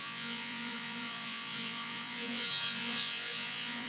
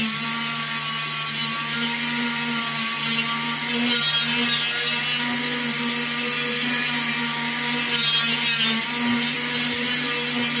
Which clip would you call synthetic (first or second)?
first